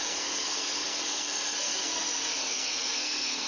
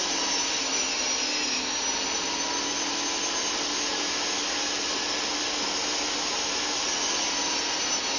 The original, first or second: second